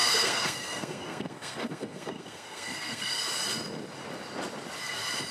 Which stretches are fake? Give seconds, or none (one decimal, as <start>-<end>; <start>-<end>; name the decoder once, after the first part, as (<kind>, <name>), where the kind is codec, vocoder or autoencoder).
0.0-3.2 (codec, SNAC)